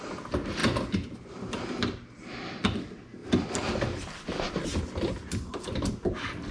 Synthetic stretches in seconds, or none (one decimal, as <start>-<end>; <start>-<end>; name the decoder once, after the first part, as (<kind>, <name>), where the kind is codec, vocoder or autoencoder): none